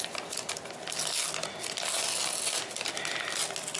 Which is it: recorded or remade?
recorded